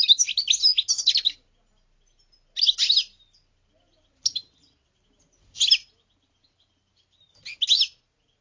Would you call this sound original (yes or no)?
yes